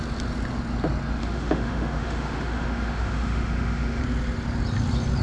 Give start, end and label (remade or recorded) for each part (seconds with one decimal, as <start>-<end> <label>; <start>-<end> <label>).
0.0-1.2 recorded; 1.2-4.0 remade; 4.0-5.2 recorded